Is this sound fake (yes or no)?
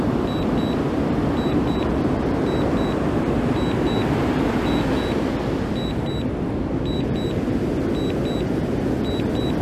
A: no